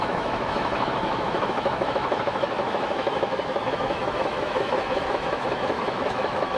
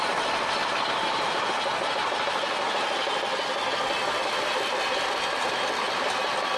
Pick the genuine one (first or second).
second